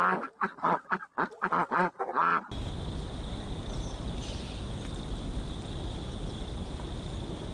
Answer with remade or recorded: recorded